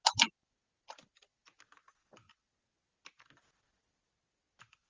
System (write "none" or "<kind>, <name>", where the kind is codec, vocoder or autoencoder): none